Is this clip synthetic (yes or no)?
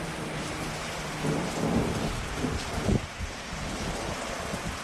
no